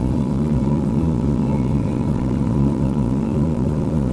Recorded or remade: remade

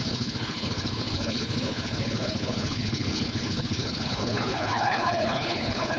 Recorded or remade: remade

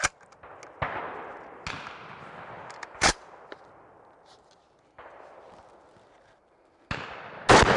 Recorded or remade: recorded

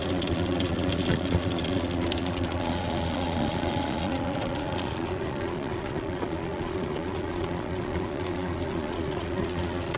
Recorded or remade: remade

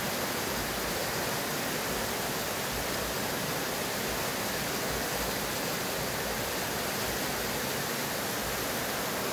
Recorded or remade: recorded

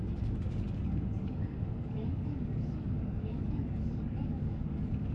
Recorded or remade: remade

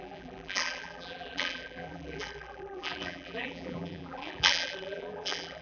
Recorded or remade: remade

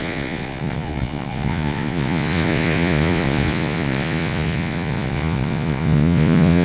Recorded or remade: remade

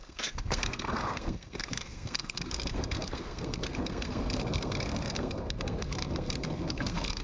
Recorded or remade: remade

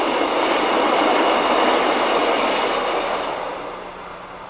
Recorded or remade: recorded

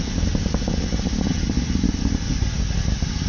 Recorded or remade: recorded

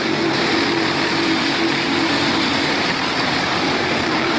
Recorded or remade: remade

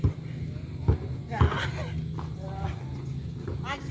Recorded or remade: recorded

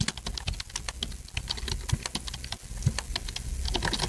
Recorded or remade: recorded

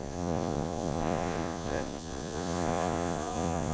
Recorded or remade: remade